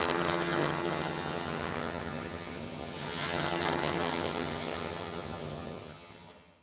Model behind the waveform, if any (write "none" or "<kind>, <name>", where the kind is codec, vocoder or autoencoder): vocoder, HiFi-GAN